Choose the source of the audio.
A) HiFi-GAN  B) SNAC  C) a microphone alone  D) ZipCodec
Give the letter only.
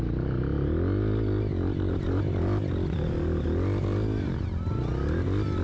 C